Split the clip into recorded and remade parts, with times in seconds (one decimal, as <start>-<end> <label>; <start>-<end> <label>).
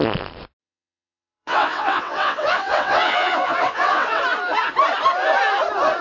0.0-0.6 recorded; 0.6-4.2 remade; 4.2-6.0 recorded